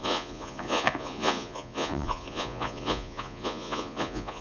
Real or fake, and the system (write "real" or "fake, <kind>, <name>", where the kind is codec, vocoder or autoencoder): fake, vocoder, Vocos